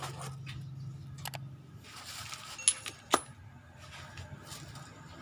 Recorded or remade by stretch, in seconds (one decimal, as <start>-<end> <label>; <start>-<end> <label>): 0.0-5.2 recorded